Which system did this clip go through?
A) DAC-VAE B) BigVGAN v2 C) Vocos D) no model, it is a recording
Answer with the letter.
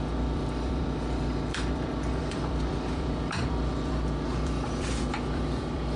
B